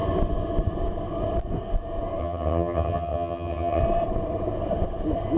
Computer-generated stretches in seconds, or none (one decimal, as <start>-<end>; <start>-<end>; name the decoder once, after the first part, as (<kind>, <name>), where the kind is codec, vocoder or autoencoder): 2.2-3.8 (vocoder, HiFi-GAN)

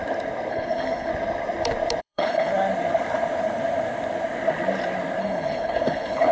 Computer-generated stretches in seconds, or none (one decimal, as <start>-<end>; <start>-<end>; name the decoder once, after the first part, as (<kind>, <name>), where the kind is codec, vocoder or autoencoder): 0.5-1.1 (codec, HILCodec); 2.0-2.5; 5.2-6.3

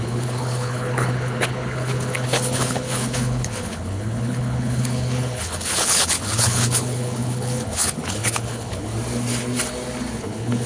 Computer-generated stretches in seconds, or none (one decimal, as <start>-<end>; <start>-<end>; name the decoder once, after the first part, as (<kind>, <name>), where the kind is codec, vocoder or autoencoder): 0.0-8.9 (codec, HILCodec); 10.2-10.7

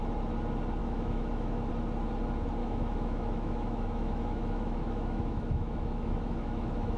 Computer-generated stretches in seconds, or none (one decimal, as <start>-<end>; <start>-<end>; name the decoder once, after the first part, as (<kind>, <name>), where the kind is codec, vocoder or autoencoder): 0.8-1.7 (autoencoder, DAC-VAE); 2.6-7.0

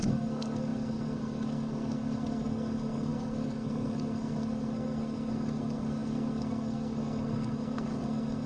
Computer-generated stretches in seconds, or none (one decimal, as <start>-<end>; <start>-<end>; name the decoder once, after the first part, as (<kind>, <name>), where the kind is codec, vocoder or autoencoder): 0.0-8.5 (codec, SNAC)

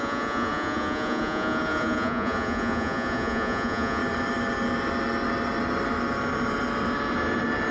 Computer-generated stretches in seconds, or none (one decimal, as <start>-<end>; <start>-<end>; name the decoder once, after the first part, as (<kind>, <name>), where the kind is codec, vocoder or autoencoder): 0.0-4.0 (vocoder, Vocos)

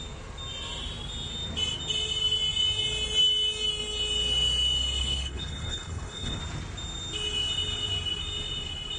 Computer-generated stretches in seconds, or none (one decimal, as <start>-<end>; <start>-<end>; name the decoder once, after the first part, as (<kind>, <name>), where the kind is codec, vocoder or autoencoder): 5.0-6.4 (codec, HILCodec)

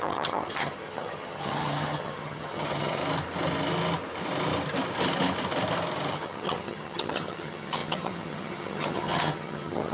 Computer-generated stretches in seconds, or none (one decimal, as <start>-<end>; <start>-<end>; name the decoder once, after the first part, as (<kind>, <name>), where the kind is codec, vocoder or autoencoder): 0.0-3.0 (vocoder, HiFi-GAN); 6.1-9.9